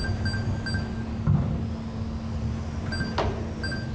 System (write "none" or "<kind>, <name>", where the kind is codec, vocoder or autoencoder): none